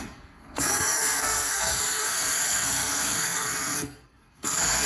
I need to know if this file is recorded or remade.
remade